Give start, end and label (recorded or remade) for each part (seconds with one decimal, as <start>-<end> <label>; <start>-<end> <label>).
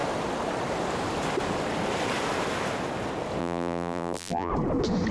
0.0-3.4 recorded; 3.4-4.5 remade; 4.5-5.1 recorded